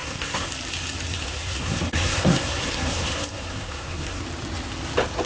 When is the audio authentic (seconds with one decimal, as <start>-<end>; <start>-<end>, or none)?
0.5-1.1; 4.2-5.3